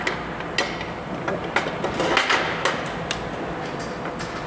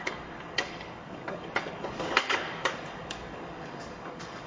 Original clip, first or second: first